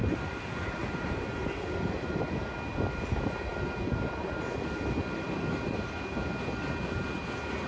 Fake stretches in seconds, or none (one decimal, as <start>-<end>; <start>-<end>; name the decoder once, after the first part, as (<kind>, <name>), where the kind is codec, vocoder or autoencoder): 0.0-2.3 (vocoder, BigVGAN v2)